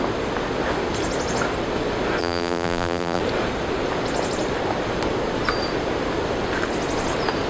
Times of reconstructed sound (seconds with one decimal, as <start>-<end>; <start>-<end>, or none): 2.2-3.2